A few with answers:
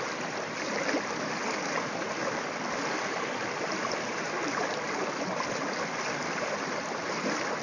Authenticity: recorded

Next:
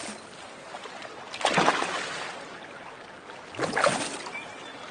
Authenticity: recorded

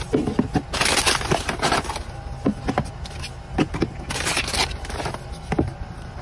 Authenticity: recorded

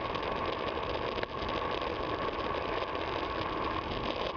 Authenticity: recorded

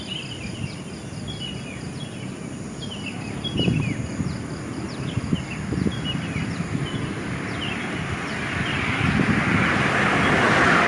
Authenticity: recorded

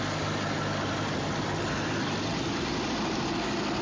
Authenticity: recorded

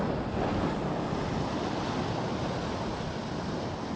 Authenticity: recorded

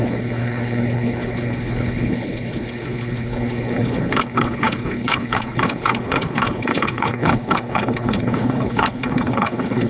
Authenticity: remade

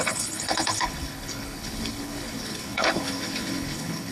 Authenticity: remade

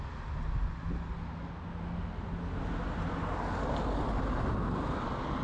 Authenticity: recorded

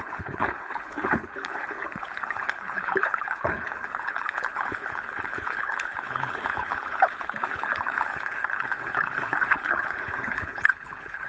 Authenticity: remade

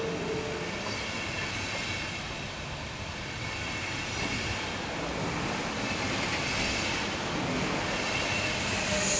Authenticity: recorded